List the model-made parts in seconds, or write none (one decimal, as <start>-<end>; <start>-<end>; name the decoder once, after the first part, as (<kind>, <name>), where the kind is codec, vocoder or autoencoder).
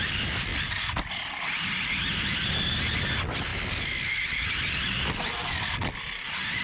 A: 3.5-4.7 (vocoder, BigVGAN v2)